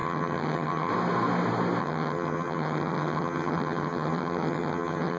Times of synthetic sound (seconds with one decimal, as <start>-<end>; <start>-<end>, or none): 0.0-0.9; 1.8-5.2